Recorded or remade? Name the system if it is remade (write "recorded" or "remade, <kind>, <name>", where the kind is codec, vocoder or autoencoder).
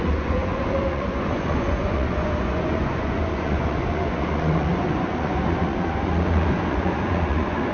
remade, vocoder, Vocos